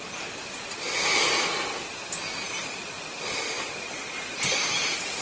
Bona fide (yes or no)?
yes